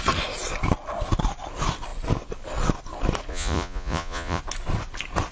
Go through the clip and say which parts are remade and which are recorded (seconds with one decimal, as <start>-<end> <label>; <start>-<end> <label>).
0.0-3.3 recorded; 3.3-4.4 remade; 4.4-5.3 recorded